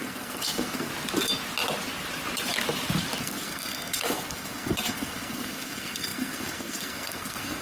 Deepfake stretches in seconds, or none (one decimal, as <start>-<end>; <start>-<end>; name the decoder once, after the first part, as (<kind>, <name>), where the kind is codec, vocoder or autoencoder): 0.0-0.9 (codec, SNAC); 3.2-7.6